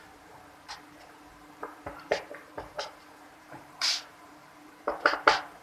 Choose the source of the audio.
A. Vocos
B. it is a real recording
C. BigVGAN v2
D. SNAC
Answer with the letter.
C